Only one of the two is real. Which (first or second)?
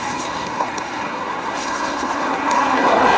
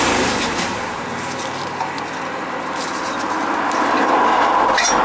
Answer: second